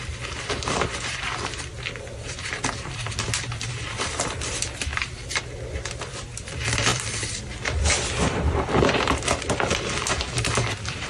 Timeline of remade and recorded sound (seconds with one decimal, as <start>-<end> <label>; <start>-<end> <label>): 0.0-11.1 remade